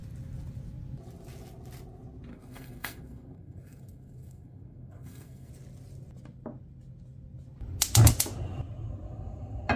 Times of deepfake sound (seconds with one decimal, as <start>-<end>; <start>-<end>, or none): 2.3-5.5